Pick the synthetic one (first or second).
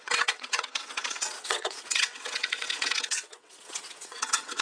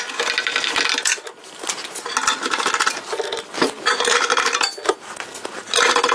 first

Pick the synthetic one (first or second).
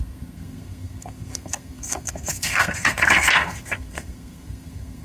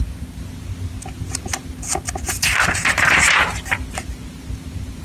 first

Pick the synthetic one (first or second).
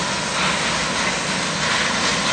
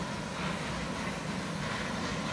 second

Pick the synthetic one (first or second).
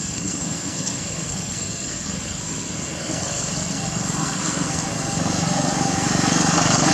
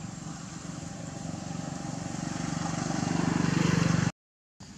first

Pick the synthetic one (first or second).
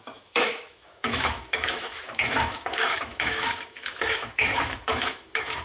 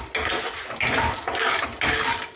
first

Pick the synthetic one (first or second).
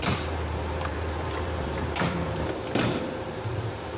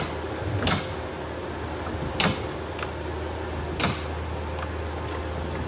first